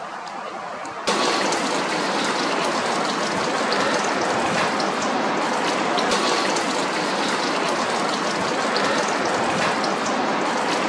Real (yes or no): yes